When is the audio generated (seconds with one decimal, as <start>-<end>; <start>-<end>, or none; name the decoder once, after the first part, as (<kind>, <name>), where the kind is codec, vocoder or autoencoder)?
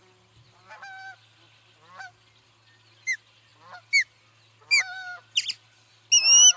none